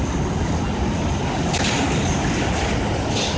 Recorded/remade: recorded